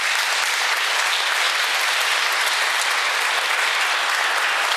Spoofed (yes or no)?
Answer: no